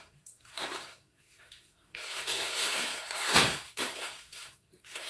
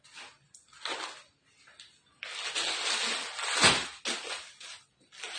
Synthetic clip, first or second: first